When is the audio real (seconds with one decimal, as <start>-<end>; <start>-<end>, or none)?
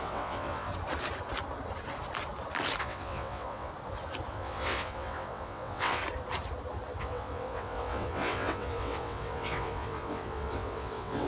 0.7-2.8; 3.7-4.3; 6.0-7.0